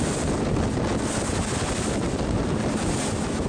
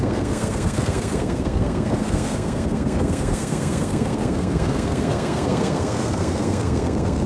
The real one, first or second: first